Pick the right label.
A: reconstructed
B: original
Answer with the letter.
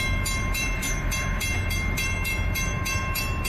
A